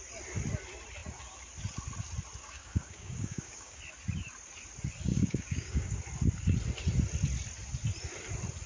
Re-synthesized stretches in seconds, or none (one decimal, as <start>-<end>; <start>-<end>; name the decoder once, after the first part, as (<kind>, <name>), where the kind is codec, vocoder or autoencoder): 2.4-3.8 (codec, DAC); 5.1-6.0